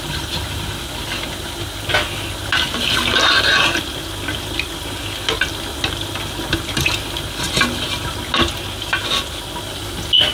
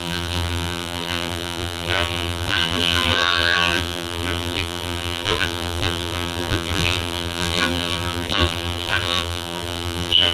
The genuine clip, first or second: first